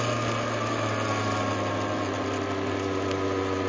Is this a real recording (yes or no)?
yes